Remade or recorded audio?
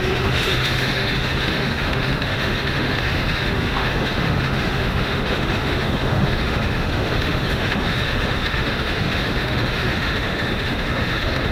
remade